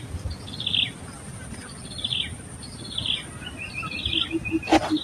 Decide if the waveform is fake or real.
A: real